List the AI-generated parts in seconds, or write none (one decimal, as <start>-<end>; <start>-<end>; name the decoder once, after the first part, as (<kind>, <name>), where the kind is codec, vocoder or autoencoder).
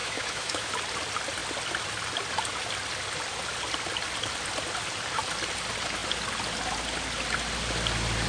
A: 0.0-0.7 (autoencoder, DAC-VAE)